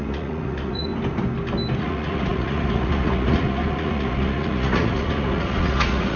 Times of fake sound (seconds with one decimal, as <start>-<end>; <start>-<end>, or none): 0.0-0.9; 1.8-6.2